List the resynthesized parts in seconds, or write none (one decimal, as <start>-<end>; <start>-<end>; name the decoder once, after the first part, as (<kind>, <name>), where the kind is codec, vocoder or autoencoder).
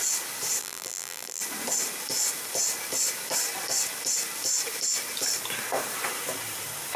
0.6-1.4 (vocoder, BigVGAN v2)